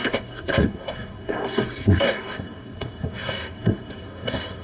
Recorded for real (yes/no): no